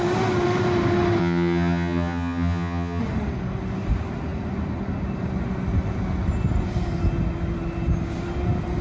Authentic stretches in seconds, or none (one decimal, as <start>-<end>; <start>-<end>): 0.0-1.2; 3.0-8.8